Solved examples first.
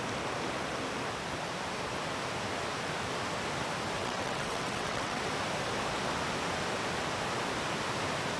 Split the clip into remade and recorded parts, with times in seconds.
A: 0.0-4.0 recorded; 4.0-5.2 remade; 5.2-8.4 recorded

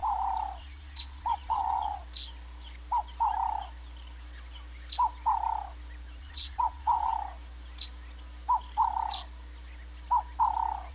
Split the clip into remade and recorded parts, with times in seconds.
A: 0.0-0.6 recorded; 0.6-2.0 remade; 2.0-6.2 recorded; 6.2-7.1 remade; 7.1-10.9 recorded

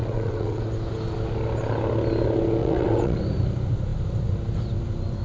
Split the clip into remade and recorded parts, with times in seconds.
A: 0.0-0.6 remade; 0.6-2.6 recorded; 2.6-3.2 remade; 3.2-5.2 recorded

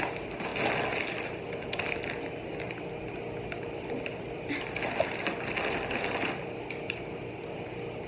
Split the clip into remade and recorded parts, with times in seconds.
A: 0.0-8.1 recorded

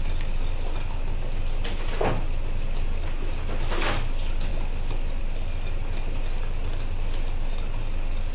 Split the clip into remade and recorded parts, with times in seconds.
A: 0.0-8.3 recorded